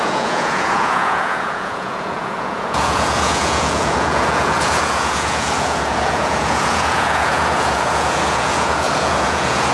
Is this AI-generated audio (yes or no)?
yes